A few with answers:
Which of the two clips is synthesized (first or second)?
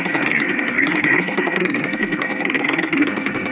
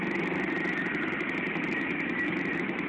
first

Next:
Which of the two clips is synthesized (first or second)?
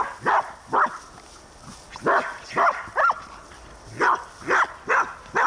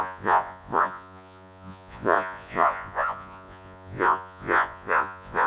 second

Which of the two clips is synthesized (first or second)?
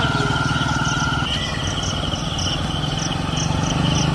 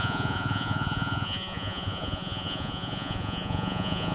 second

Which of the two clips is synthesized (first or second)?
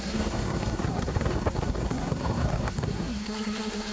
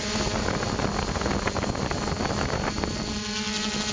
first